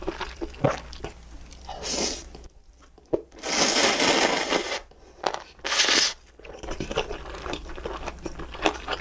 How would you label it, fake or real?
real